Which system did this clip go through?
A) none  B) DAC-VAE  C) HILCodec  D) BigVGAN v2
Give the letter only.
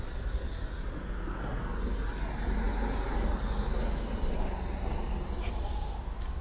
A